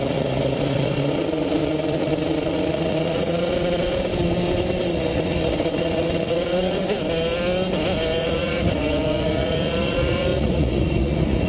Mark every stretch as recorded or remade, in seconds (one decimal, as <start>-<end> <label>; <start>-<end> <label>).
0.0-3.9 remade; 3.9-4.9 recorded; 4.9-6.8 remade; 6.8-8.2 recorded; 8.2-11.5 remade

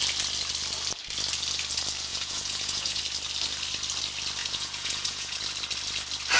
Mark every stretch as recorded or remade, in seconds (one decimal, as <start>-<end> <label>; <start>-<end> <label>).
0.0-2.1 recorded; 2.1-3.0 remade; 3.0-4.4 recorded; 4.4-5.4 remade; 5.4-6.4 recorded

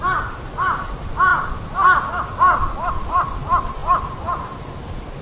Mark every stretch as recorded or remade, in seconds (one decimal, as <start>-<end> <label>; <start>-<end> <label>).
0.0-5.2 recorded

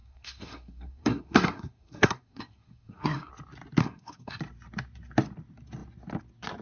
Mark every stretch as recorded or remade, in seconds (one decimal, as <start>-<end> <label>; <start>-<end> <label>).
0.0-3.3 remade; 3.3-3.8 recorded; 3.8-4.4 remade; 4.4-6.6 recorded

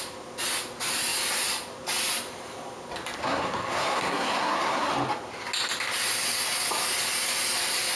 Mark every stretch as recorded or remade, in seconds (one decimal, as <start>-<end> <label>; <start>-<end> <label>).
0.0-3.2 recorded; 3.2-4.9 remade; 4.9-8.0 recorded

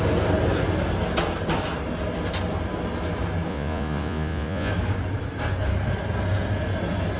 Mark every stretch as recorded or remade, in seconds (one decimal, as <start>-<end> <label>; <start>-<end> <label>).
0.0-3.5 recorded; 3.5-4.7 remade; 4.7-7.2 recorded